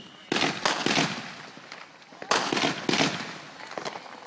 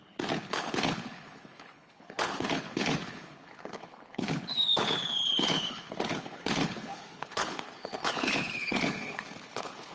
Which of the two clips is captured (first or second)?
first